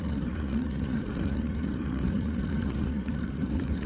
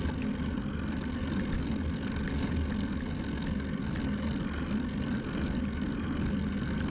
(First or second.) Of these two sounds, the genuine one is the second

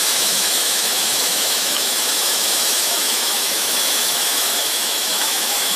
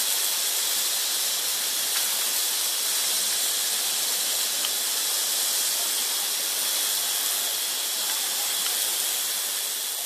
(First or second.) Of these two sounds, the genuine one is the second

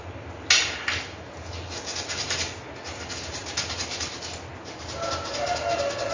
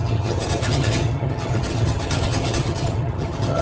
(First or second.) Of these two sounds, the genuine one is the first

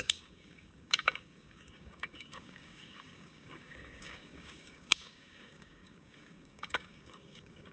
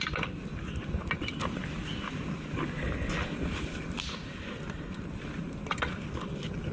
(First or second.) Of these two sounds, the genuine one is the second